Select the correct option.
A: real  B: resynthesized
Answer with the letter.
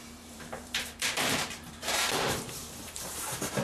B